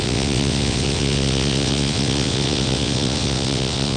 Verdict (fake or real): fake